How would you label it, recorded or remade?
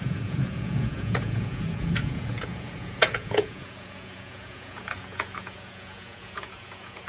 remade